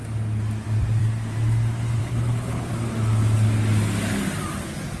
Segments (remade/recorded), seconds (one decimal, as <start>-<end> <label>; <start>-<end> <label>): 0.0-2.0 recorded; 2.0-2.7 remade; 2.7-5.0 recorded

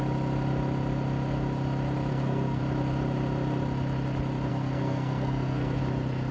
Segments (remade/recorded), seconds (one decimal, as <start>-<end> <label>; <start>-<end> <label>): 0.0-2.1 recorded; 2.1-2.6 remade; 2.6-4.5 recorded; 4.5-5.8 remade; 5.8-6.3 recorded

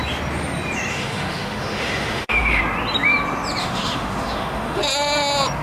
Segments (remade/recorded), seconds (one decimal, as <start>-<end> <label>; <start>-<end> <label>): 0.0-0.9 recorded; 0.9-2.6 remade; 2.6-3.6 recorded; 3.6-4.8 remade; 4.8-5.6 recorded

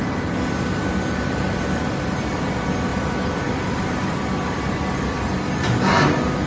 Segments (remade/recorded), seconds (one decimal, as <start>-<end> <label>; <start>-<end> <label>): 0.0-2.9 recorded; 2.9-3.6 remade; 3.6-6.5 recorded

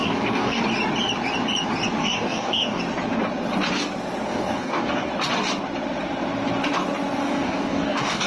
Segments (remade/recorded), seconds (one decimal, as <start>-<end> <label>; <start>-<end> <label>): 0.0-0.6 remade; 0.6-2.0 recorded; 2.0-2.8 remade; 2.8-4.3 recorded; 4.3-5.1 remade; 5.1-7.2 recorded; 7.2-8.3 remade

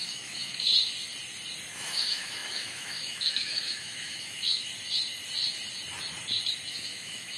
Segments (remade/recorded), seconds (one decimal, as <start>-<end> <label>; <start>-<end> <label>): 0.0-0.7 remade; 0.7-1.7 recorded; 1.7-4.7 remade; 4.7-6.7 recorded; 6.7-7.4 remade